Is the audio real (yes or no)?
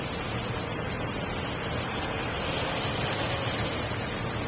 yes